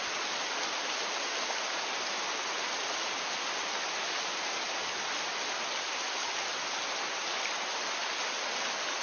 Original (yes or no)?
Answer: yes